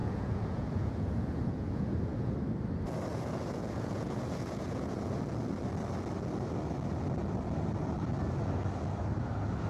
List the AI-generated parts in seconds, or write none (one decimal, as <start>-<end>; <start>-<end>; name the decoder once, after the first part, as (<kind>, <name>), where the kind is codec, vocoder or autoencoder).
0.0-2.5 (vocoder, Vocos); 3.1-5.2